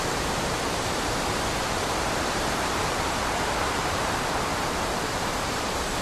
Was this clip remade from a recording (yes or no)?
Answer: yes